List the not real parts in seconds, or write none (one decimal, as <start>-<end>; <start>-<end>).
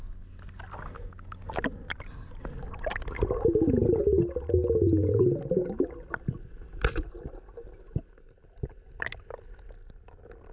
none